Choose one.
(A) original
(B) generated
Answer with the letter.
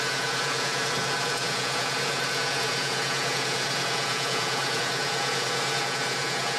B